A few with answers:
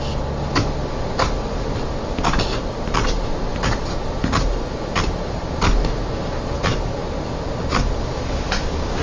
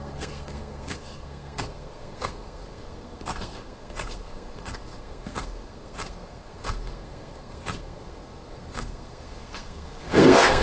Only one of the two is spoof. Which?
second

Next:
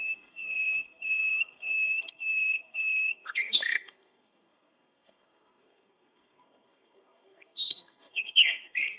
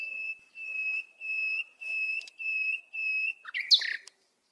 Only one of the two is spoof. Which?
first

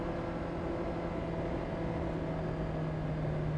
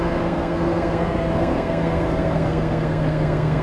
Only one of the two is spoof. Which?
second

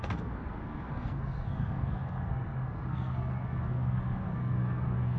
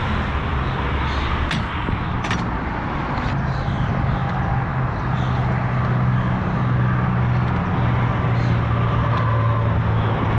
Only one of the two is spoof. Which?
first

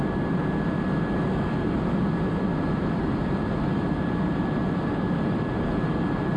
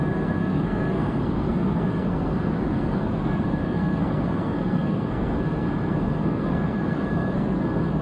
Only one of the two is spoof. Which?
second